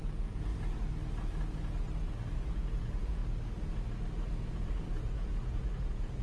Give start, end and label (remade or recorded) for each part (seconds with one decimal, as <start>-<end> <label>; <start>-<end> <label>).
0.0-0.5 remade; 0.5-2.3 recorded; 2.3-3.2 remade; 3.2-4.3 recorded; 4.3-6.2 remade